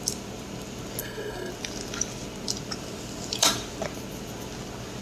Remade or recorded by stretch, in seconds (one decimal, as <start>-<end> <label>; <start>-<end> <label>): 0.0-1.0 recorded; 1.0-1.5 remade; 1.5-5.0 recorded